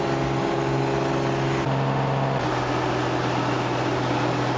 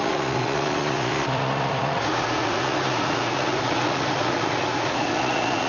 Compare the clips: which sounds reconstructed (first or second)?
second